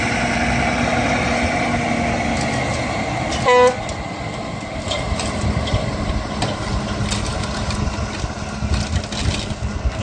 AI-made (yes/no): no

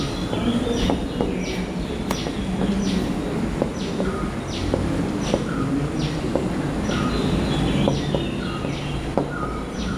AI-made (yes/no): no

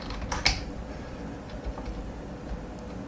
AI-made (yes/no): no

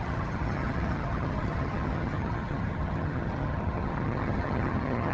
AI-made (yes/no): yes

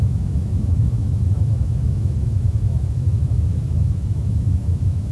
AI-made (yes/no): yes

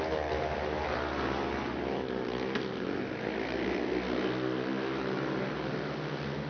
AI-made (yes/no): no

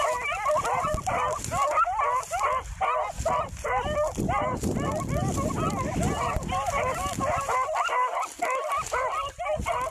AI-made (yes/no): no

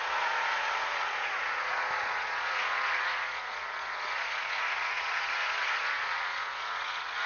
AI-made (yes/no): yes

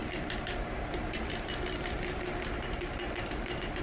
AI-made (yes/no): no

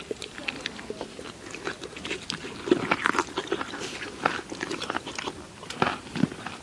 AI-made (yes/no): no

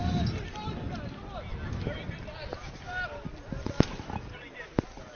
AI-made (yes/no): no